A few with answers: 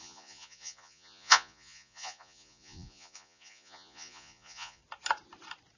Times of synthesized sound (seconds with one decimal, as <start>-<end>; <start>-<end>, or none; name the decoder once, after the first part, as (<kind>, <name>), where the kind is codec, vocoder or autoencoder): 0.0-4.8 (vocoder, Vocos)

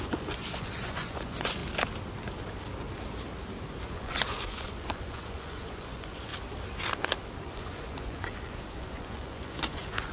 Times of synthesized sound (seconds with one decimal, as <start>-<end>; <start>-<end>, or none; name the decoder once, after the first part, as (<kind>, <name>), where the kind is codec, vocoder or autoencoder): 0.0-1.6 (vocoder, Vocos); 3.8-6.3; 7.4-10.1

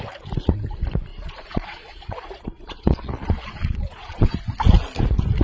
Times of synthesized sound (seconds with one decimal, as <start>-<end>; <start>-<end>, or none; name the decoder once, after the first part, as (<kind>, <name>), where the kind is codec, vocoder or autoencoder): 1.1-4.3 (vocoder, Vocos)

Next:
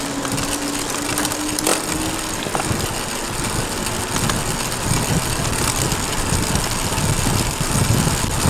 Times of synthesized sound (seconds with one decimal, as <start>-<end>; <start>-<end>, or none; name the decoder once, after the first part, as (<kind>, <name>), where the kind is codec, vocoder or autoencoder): none

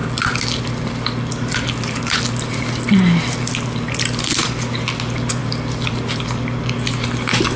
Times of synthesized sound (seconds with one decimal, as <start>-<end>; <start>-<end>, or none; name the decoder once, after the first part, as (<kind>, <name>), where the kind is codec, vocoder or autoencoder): none

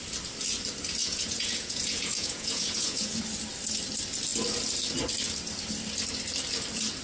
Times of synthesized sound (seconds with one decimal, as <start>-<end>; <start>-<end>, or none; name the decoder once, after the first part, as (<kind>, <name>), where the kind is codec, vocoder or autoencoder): 1.0-3.2 (vocoder, Vocos)

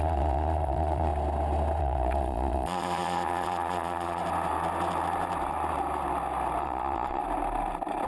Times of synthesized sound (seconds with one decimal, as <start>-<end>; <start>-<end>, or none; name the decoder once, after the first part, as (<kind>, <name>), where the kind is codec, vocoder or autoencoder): 0.0-1.1 (vocoder, Vocos); 1.8-4.2; 6.6-7.2

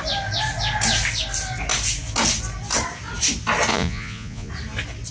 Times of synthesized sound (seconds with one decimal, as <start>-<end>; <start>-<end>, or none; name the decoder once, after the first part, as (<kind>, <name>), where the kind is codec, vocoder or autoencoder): 3.7-4.5 (vocoder, Vocos)